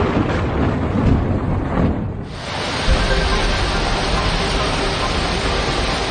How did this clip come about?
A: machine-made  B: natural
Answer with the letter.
B